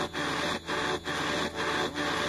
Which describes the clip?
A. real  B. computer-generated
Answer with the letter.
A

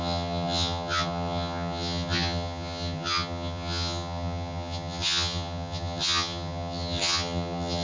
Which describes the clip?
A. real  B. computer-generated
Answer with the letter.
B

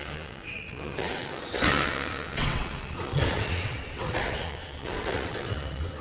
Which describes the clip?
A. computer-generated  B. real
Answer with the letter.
A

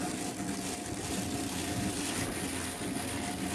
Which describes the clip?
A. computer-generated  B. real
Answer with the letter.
B